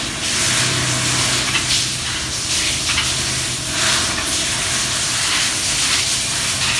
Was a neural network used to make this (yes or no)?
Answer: no